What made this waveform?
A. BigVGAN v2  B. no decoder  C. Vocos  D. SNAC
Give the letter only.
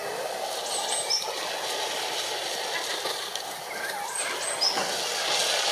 B